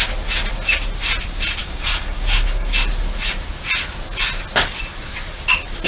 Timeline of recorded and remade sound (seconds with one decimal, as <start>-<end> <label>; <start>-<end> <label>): 0.0-1.6 recorded; 1.6-2.7 remade; 2.7-5.9 recorded